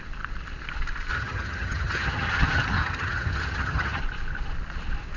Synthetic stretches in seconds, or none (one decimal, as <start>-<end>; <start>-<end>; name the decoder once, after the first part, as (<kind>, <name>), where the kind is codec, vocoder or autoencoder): 1.1-4.0 (vocoder, HiFi-GAN)